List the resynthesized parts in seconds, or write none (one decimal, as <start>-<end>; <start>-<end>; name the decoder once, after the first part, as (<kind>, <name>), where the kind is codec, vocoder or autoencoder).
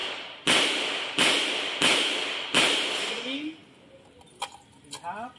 none